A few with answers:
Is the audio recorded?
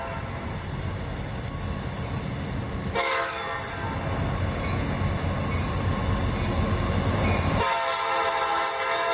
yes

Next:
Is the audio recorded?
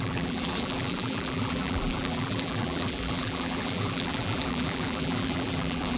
no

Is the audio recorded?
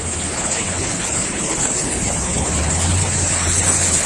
no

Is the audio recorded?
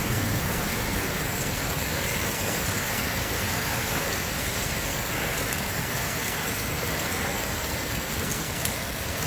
no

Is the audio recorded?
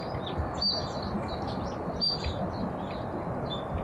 yes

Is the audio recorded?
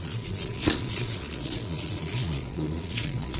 no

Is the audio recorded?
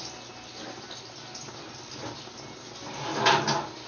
yes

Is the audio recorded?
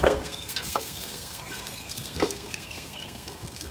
no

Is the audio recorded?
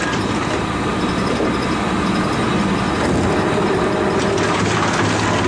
yes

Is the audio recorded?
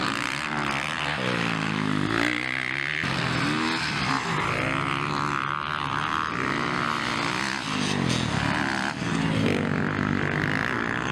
yes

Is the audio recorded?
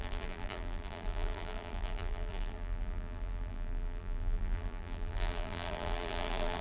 no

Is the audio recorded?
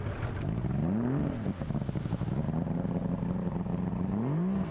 yes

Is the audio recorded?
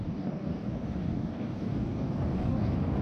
no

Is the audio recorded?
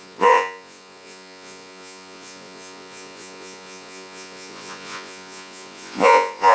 no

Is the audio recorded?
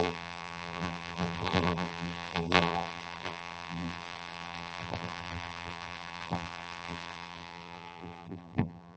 no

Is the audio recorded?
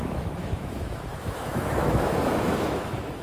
no